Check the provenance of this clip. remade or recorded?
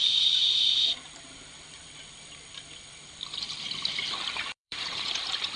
remade